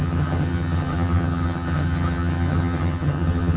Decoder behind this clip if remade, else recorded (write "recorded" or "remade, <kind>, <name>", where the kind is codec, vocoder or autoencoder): remade, vocoder, HiFi-GAN